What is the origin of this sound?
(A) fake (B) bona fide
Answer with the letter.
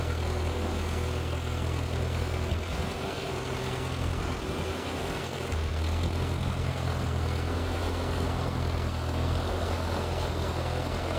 A